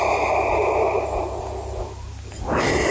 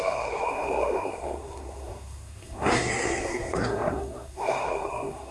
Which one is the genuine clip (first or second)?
first